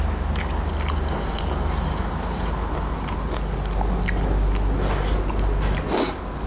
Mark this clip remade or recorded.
recorded